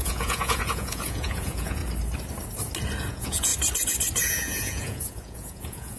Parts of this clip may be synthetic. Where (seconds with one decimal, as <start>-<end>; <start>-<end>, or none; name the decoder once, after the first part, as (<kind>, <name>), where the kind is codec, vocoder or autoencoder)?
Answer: 0.0-1.8 (vocoder, Vocos); 3.1-3.5; 4.2-6.0